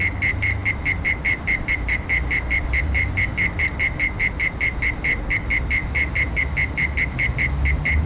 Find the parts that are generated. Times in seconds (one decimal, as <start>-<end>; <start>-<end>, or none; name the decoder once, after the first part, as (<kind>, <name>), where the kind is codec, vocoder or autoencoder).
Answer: none